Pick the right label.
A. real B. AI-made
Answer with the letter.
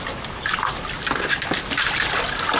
A